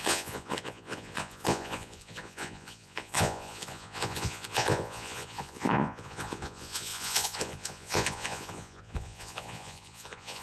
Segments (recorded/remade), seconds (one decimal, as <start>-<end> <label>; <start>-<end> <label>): 0.0-10.4 remade